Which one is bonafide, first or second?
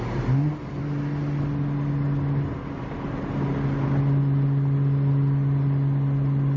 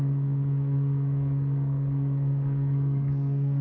first